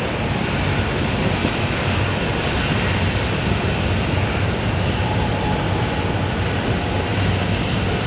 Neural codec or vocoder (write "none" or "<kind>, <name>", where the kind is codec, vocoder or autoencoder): none